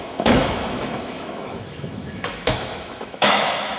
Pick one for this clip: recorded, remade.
remade